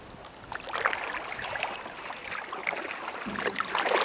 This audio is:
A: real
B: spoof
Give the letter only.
A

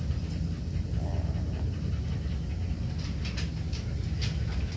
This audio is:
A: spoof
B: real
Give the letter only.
B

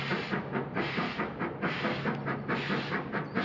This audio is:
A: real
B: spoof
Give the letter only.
A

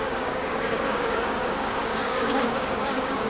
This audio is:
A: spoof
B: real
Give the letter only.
A